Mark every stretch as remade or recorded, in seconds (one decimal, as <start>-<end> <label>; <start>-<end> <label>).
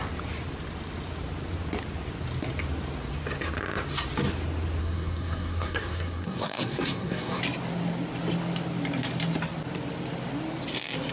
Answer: 0.0-4.8 recorded; 4.8-7.4 remade; 7.4-11.1 recorded